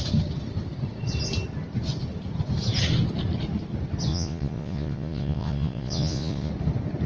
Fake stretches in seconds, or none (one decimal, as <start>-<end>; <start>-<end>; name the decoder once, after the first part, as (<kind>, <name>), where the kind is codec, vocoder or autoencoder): 4.1-6.5 (vocoder, Vocos)